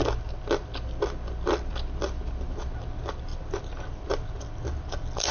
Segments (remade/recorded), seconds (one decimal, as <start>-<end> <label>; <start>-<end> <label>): 0.0-5.3 recorded